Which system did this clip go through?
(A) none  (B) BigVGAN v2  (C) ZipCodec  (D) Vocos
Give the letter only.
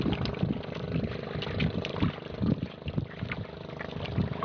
B